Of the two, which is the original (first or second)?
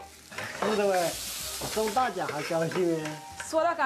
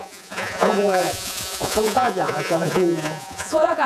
first